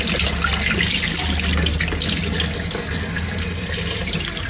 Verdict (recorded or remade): recorded